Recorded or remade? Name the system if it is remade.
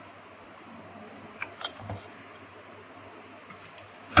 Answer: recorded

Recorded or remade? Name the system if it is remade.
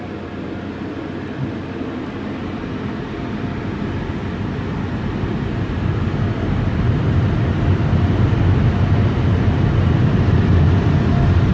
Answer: recorded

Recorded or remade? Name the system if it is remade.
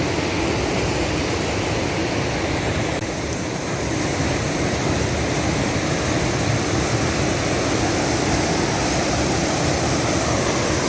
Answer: recorded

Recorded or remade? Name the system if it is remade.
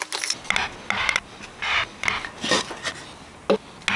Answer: recorded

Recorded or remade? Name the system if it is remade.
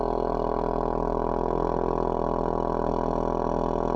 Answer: recorded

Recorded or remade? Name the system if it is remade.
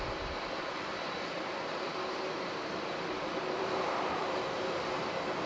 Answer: remade, vocoder, BigVGAN v2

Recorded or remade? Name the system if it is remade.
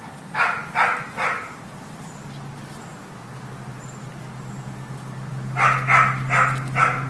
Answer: recorded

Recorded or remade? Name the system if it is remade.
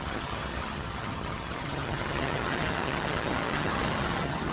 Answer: remade, vocoder, HiFi-GAN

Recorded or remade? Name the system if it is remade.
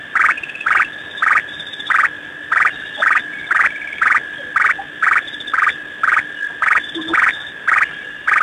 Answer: recorded